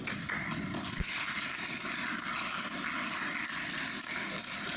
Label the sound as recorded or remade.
recorded